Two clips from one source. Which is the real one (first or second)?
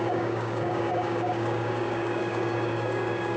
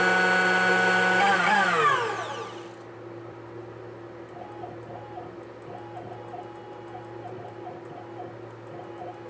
second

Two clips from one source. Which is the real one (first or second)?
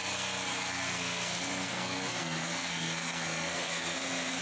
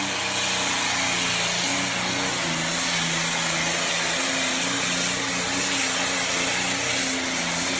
second